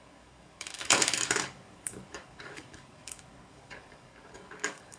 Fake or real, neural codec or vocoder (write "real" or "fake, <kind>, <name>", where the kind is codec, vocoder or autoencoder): fake, codec, DAC